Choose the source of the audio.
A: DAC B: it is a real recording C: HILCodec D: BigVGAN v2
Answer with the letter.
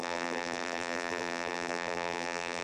D